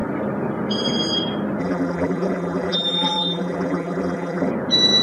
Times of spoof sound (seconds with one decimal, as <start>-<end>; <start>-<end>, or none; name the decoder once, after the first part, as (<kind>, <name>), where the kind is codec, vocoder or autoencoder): 1.6-4.5 (vocoder, BigVGAN v2)